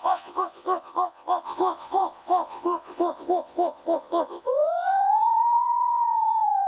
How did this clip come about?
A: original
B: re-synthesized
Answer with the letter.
B